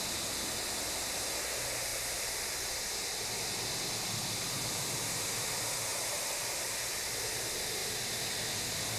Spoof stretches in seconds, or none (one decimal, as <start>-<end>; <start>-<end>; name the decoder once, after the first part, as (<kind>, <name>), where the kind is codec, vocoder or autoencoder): none